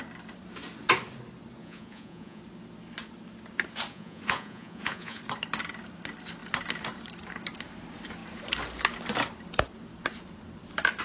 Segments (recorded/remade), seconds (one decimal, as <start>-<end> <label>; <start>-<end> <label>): 0.0-1.6 recorded; 1.6-2.4 remade; 2.4-3.9 recorded; 3.9-5.2 remade; 5.2-11.0 recorded